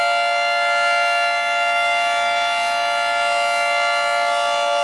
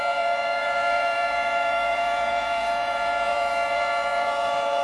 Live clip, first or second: first